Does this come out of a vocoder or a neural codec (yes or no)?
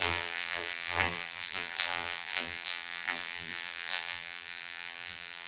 yes